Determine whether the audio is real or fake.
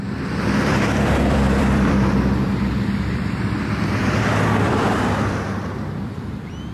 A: fake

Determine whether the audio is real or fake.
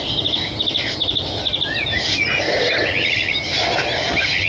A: real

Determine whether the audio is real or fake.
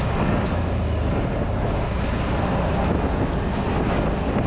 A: real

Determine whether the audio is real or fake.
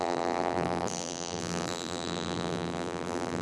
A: fake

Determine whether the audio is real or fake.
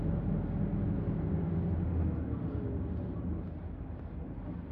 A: real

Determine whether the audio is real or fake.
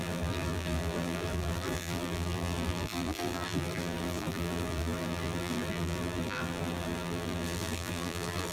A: fake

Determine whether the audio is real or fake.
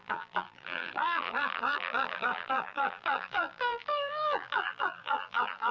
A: fake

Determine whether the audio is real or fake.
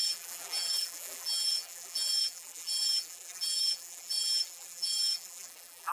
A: fake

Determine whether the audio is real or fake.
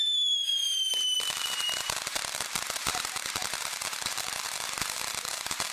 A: fake